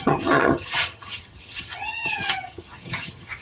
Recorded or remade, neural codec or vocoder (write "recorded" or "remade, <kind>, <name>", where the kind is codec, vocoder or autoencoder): remade, vocoder, HiFi-GAN